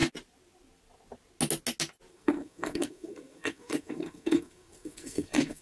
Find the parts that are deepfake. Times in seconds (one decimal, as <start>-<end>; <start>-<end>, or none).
2.1-5.6